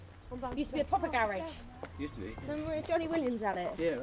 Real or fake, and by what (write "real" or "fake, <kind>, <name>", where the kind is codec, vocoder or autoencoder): real